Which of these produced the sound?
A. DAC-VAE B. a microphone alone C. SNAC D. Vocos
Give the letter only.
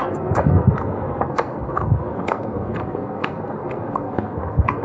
C